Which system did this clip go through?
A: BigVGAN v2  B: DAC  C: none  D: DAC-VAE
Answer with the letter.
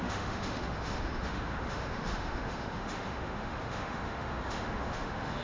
D